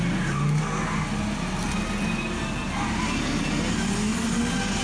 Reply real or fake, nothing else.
real